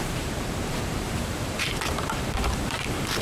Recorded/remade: remade